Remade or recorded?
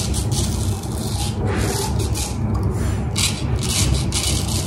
recorded